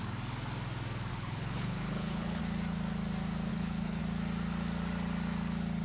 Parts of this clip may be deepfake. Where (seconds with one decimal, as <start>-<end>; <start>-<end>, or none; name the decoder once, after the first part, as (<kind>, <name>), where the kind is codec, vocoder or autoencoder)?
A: 1.1-2.4 (codec, HILCodec); 3.5-4.0